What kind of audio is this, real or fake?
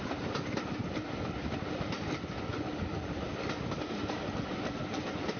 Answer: real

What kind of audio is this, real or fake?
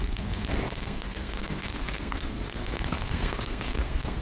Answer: fake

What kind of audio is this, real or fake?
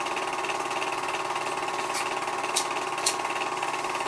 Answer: real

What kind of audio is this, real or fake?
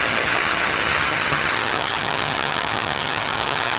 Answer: fake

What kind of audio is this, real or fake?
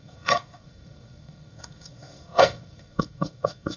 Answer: fake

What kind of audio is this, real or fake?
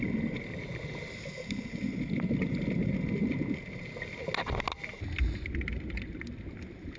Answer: real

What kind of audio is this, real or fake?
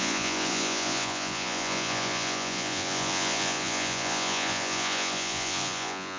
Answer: fake